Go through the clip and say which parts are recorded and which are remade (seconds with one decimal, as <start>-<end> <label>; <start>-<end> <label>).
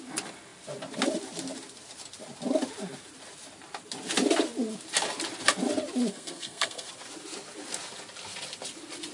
0.0-6.1 recorded; 6.1-6.9 remade; 6.9-9.1 recorded